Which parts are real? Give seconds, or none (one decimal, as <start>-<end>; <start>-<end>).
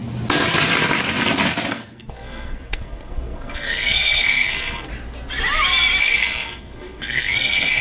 0.0-1.7; 4.9-6.0